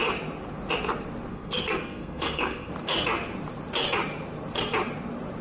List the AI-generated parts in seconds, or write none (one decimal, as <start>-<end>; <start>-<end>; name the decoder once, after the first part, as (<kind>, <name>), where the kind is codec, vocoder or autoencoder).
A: 1.3-2.7 (codec, SNAC)

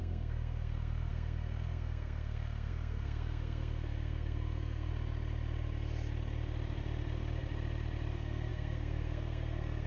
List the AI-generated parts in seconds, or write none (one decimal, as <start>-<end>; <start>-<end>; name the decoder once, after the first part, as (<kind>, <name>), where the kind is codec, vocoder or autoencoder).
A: 0.0-4.9 (codec, SNAC); 8.1-9.9